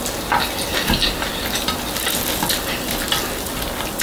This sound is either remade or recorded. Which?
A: recorded